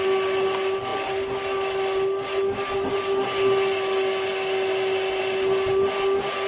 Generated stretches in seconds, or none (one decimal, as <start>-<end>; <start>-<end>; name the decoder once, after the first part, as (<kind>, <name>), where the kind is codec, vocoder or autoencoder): none

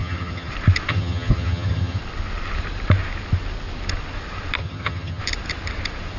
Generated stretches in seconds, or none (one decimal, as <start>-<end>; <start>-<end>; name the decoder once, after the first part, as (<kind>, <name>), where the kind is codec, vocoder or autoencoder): 0.0-0.5 (vocoder, HiFi-GAN); 0.9-2.0; 4.6-5.2

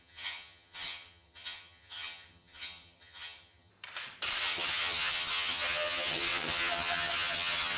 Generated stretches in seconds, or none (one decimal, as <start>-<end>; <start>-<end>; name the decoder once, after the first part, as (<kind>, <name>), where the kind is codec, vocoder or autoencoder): 0.0-3.7 (vocoder, HiFi-GAN); 4.4-7.8

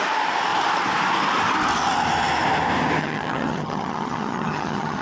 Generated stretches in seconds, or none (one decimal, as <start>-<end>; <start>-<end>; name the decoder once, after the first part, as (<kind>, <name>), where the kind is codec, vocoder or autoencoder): 3.0-5.0 (vocoder, HiFi-GAN)

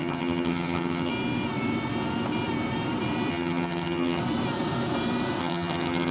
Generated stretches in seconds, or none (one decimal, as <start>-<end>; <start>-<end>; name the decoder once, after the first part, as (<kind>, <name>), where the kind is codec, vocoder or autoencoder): 0.0-1.1 (vocoder, HiFi-GAN); 3.3-4.2; 5.4-6.1

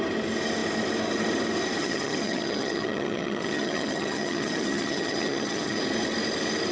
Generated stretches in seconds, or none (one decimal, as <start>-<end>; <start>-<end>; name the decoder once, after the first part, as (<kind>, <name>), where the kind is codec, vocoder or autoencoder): 1.8-5.8 (vocoder, HiFi-GAN)

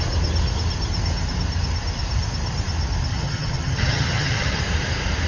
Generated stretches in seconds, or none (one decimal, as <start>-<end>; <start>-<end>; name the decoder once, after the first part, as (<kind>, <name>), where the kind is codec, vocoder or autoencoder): 3.1-4.6 (vocoder, HiFi-GAN)